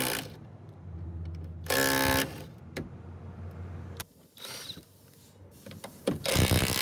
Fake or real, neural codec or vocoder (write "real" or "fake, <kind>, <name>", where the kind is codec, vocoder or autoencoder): real